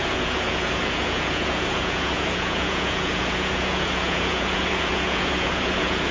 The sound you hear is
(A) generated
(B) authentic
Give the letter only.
A